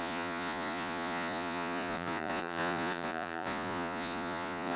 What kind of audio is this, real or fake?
fake